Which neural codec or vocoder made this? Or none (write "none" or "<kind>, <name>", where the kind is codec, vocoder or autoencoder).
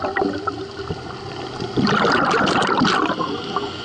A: none